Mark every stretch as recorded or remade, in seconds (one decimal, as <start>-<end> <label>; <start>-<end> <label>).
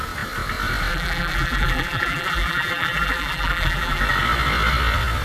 0.0-0.9 recorded; 0.9-4.0 remade; 4.0-5.2 recorded